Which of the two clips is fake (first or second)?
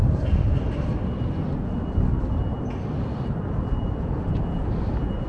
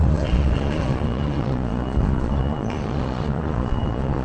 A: second